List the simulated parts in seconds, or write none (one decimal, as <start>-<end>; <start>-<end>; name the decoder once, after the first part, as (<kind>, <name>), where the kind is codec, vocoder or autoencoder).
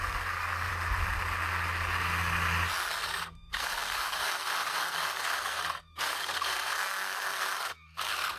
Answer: 0.0-0.7 (codec, SNAC); 2.9-8.4